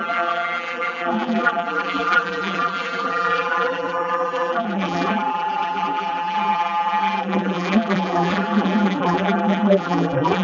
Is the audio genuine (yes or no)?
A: no